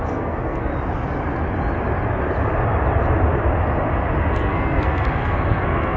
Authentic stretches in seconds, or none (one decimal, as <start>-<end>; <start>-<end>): 0.7-4.3